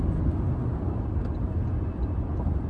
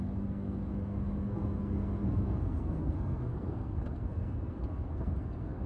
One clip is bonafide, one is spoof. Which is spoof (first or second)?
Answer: second